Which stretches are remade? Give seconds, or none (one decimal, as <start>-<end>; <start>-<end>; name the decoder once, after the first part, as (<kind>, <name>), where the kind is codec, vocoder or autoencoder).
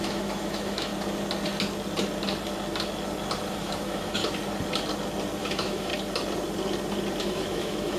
0.0-0.9 (autoencoder, DAC-VAE); 3.5-4.2; 5.4-5.9; 7.2-8.0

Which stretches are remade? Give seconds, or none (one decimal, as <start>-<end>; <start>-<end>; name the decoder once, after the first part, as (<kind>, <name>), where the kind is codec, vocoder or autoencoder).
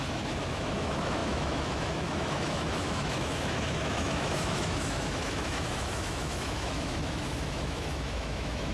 0.0-8.7 (autoencoder, DAC-VAE)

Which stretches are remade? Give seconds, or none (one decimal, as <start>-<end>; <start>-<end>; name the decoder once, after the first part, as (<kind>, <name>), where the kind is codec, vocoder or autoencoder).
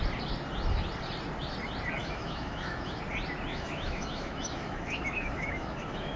2.0-3.0 (autoencoder, DAC-VAE); 3.5-6.2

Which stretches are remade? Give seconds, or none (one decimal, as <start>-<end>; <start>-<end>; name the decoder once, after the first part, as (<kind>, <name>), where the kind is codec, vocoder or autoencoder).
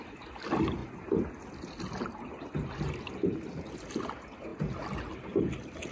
none